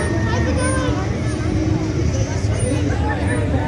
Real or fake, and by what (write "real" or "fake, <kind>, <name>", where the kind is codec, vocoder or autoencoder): real